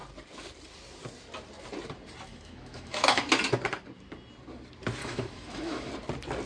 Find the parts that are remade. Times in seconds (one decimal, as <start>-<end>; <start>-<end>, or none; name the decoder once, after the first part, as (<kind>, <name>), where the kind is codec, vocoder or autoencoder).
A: 2.3-3.2 (autoencoder, DAC-VAE); 5.0-5.9